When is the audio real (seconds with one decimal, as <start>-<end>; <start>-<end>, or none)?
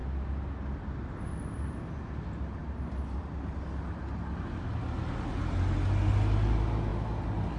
0.0-7.6